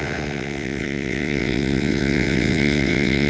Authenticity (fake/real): fake